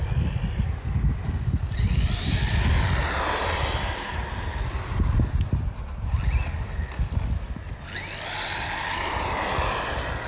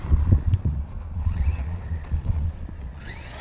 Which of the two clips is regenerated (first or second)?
second